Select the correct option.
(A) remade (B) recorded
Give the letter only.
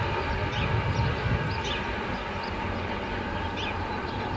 B